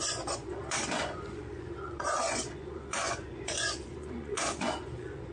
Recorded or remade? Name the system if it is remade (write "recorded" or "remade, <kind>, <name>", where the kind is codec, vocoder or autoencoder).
remade, vocoder, Vocos